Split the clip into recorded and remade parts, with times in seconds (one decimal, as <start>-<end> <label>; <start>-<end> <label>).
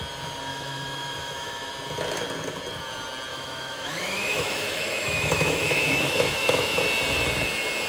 0.0-0.5 recorded; 0.5-1.7 remade; 1.7-3.3 recorded; 3.3-6.8 remade; 6.8-7.9 recorded